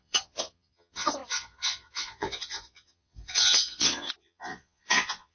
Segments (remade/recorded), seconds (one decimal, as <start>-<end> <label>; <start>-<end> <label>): 0.0-5.3 remade